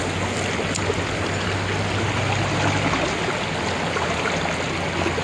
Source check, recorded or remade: recorded